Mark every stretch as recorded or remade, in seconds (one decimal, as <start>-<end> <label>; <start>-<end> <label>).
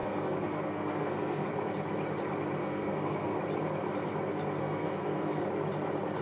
0.0-1.5 remade; 1.5-2.6 recorded; 2.6-3.4 remade; 3.4-4.6 recorded; 4.6-5.4 remade; 5.4-6.2 recorded